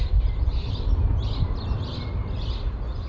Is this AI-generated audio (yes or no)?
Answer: no